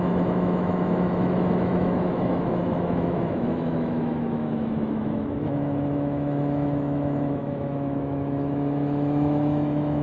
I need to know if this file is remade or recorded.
remade